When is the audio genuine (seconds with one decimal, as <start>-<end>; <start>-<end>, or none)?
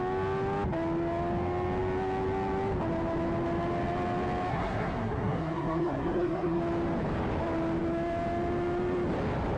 0.0-4.5; 6.6-9.6